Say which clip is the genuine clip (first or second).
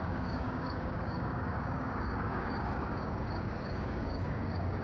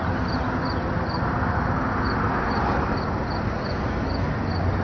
second